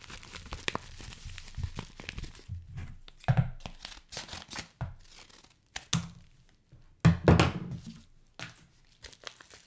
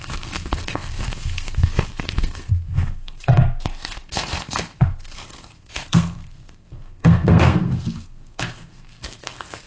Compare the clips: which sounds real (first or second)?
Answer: first